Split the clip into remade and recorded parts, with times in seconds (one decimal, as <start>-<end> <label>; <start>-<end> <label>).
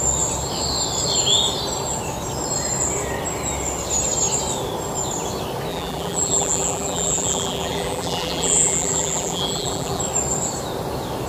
0.0-5.7 recorded; 5.7-10.0 remade; 10.0-11.3 recorded